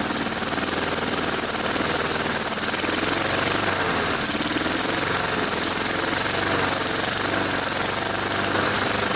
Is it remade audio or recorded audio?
recorded